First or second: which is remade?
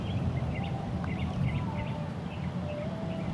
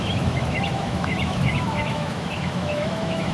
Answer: second